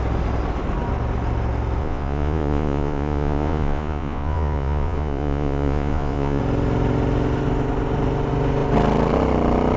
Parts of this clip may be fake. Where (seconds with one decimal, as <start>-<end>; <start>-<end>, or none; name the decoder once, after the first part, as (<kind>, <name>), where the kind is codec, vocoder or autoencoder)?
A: 1.8-6.4 (vocoder, Vocos)